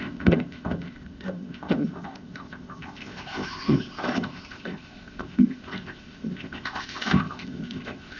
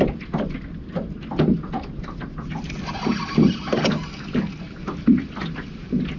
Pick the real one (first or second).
second